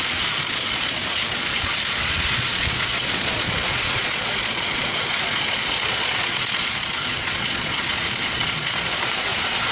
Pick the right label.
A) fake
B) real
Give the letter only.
A